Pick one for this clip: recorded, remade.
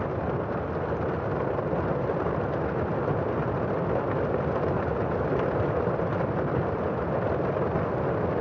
recorded